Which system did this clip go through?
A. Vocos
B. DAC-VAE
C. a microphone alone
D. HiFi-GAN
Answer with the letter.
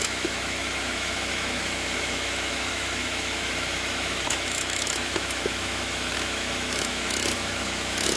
B